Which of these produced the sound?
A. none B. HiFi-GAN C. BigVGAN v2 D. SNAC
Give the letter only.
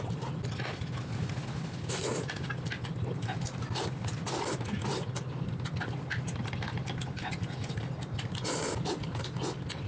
A